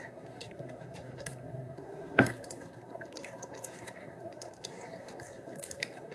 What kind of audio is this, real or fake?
fake